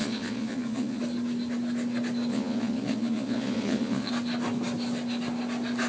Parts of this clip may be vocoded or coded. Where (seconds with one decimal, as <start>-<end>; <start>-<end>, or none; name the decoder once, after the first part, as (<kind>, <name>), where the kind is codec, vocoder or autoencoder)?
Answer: 0.0-1.0 (vocoder, Vocos); 2.3-4.1